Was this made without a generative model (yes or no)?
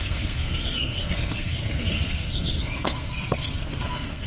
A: no